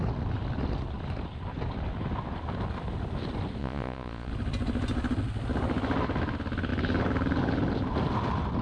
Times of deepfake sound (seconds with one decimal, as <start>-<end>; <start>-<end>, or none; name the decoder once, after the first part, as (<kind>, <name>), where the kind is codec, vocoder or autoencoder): 3.6-4.3 (vocoder, Vocos)